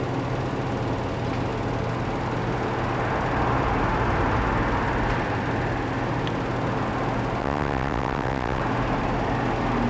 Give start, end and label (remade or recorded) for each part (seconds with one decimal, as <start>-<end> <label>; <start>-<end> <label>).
0.0-7.4 recorded; 7.4-8.6 remade; 8.6-9.9 recorded